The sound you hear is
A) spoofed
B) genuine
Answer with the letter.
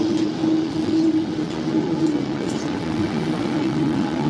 A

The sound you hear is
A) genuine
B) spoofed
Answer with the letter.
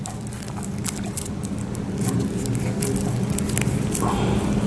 A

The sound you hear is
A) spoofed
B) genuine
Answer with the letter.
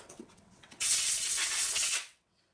A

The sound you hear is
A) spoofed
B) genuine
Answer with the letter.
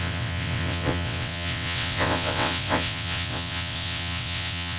A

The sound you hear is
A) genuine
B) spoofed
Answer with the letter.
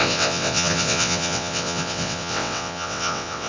B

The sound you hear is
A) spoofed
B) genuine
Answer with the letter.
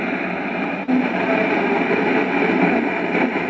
B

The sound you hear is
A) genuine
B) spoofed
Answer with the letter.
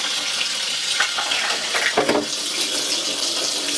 A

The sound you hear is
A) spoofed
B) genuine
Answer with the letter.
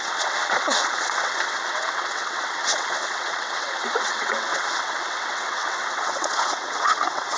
A